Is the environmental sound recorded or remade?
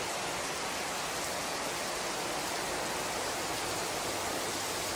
recorded